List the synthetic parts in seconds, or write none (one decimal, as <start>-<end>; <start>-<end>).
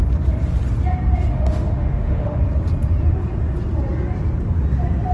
1.3-2.4